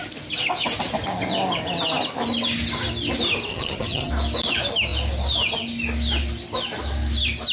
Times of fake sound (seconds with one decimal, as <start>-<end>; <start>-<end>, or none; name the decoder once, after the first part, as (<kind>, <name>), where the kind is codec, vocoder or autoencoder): 3.5-4.1 (vocoder, HiFi-GAN)